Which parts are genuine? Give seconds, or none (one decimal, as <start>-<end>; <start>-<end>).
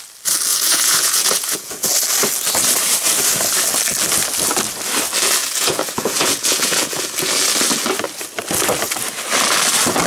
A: 0.0-0.5; 1.9-5.4; 7.0-10.1